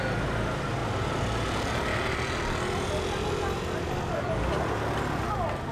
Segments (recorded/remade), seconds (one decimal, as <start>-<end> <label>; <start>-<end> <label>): 0.0-5.7 recorded